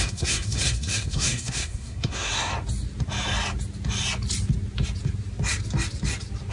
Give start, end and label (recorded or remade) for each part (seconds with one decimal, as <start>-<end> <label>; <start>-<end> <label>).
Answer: 0.0-2.5 remade; 2.5-6.5 recorded